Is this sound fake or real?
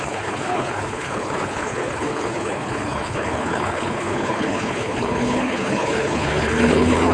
fake